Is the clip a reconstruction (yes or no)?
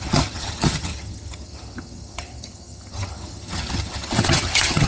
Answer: yes